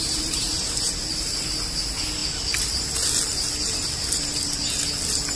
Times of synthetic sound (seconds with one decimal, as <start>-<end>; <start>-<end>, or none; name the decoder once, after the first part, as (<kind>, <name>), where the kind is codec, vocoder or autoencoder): 0.0-1.0 (vocoder, BigVGAN v2)

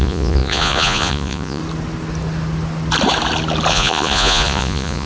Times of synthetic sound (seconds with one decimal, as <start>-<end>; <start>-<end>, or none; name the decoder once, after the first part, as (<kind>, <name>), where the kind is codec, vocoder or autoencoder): 0.0-1.6 (vocoder, Vocos); 3.7-5.1

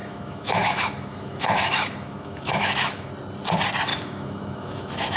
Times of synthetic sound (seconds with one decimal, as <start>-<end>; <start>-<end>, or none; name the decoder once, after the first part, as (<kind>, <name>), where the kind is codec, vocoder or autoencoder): 0.0-3.1 (autoencoder, DAC-VAE); 3.9-5.2

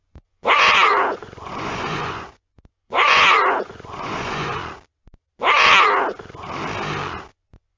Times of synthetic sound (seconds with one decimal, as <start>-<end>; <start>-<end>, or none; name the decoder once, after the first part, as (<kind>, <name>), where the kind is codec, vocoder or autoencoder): 0.0-4.6 (vocoder, Vocos); 7.3-7.8

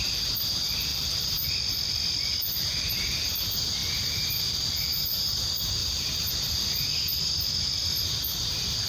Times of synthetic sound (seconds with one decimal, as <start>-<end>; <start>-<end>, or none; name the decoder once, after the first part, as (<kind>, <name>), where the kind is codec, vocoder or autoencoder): 0.9-1.5 (vocoder, BigVGAN v2); 3.8-5.3; 5.8-6.3

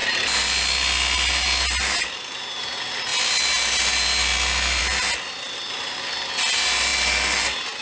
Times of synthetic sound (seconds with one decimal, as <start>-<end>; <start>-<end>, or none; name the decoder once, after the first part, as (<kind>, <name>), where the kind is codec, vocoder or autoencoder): none

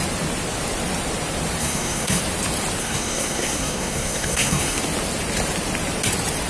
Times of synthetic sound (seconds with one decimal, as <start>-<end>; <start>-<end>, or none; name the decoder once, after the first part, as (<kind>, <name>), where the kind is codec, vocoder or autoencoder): 1.6-2.2 (codec, SNAC); 2.8-4.8